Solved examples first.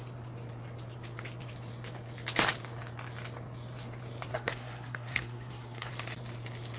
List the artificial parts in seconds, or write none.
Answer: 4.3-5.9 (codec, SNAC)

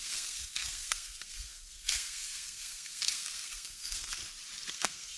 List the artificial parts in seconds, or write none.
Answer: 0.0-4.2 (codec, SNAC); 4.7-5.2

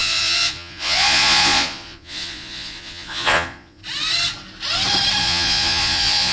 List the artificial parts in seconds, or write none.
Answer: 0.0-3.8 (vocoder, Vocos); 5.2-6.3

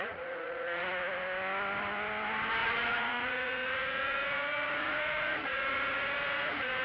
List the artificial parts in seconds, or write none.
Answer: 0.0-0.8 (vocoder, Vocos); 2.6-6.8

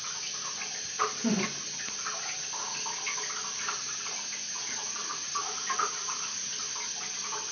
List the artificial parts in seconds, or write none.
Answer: 3.8-6.5 (vocoder, Vocos)